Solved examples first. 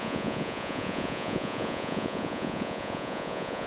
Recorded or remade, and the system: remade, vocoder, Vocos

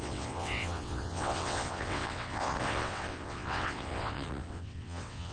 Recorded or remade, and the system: remade, vocoder, WaveNeXt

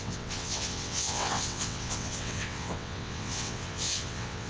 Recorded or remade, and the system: remade, vocoder, WaveNeXt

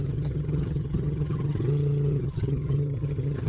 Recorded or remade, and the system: remade, vocoder, HiFi-GAN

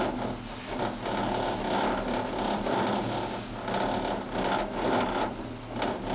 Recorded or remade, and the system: recorded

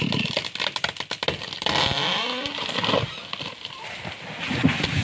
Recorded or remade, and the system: recorded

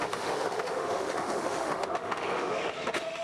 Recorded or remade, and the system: remade, autoencoder, DAC-VAE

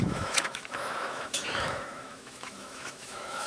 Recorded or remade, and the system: remade, autoencoder, DAC-VAE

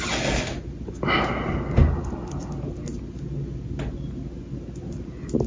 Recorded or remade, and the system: recorded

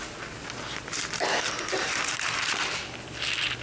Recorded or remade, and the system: recorded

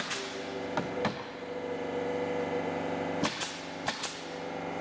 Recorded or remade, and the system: recorded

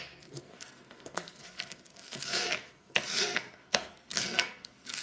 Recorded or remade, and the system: remade, codec, SNAC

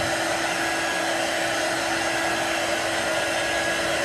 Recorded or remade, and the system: recorded